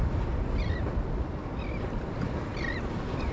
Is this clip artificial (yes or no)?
no